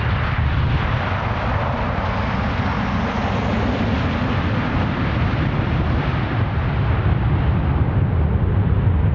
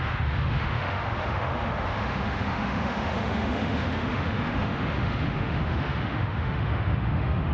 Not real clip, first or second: second